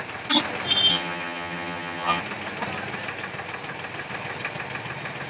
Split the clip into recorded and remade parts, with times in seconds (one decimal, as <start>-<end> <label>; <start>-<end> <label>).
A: 0.0-0.9 recorded; 0.9-2.2 remade; 2.2-5.3 recorded